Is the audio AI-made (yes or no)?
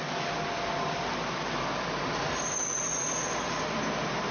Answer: no